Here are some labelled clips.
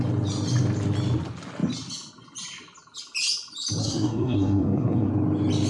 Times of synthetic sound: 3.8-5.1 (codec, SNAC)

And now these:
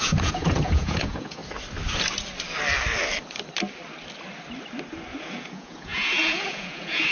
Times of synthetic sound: 0.0-1.4 (vocoder, Vocos); 5.2-7.1

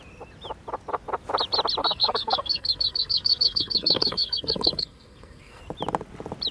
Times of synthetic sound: 1.8-5.6 (codec, SNAC)

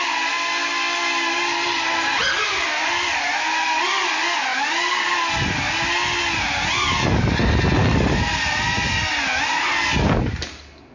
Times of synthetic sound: none

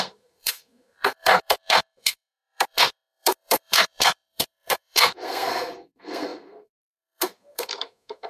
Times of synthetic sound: 0.0-8.3 (codec, SNAC)

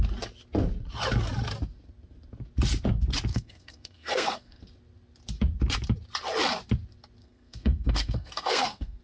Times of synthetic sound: 3.3-4.6 (codec, SNAC); 7.2-9.0

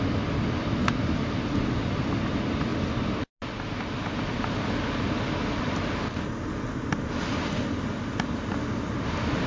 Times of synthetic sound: none